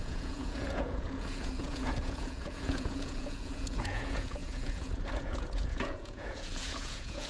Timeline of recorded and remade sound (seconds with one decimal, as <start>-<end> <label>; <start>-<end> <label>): 0.0-7.3 remade

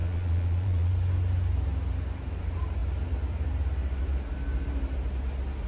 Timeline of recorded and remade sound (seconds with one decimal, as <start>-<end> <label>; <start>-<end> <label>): 0.0-0.9 remade; 0.9-5.7 recorded